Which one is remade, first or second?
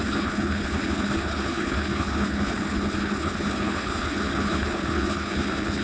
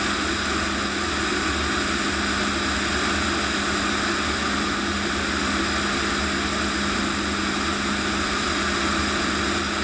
first